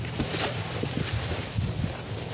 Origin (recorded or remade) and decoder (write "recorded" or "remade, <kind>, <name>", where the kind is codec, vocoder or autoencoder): recorded